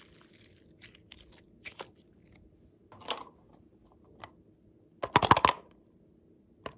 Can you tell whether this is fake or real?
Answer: real